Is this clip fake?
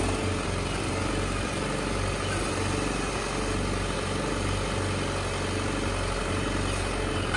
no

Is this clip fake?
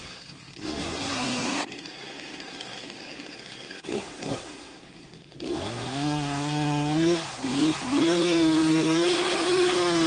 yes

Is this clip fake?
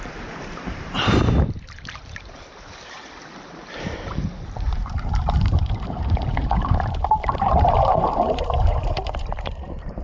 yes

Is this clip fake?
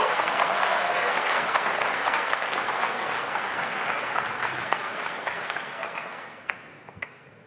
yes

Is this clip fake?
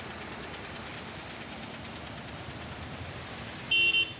no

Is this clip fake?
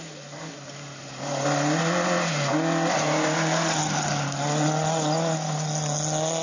no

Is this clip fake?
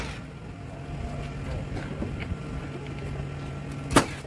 no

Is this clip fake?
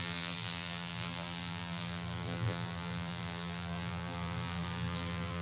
yes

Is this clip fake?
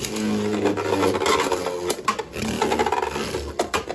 no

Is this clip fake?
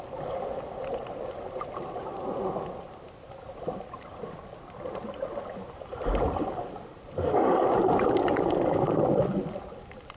no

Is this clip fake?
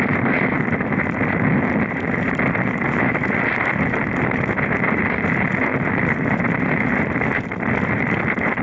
no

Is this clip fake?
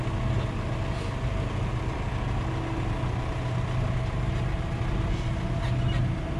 no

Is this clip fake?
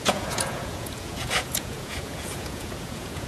yes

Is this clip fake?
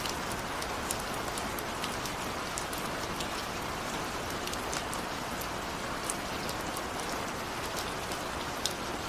no